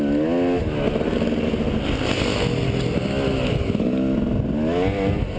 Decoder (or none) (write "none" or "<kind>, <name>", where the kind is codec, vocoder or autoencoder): none